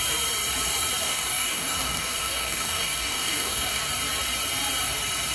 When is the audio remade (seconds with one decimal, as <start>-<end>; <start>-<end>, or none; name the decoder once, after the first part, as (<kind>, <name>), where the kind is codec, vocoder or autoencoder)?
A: 1.0-3.8 (codec, DAC)